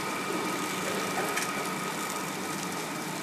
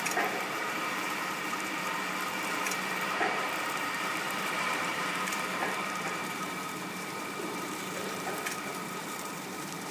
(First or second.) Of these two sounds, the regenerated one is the second